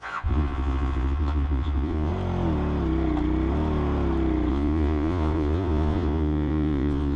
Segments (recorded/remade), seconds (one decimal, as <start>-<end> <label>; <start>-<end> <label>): 0.0-2.1 remade; 2.1-4.5 recorded; 4.5-7.2 remade